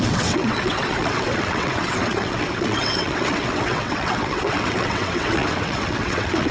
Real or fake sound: fake